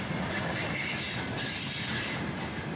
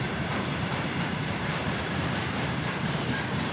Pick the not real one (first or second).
second